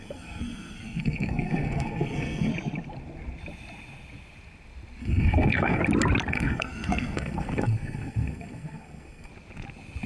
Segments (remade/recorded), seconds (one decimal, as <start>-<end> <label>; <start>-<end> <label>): 0.0-2.5 remade; 2.5-5.0 recorded; 5.0-5.8 remade; 5.8-6.3 recorded; 6.3-9.3 remade; 9.3-10.1 recorded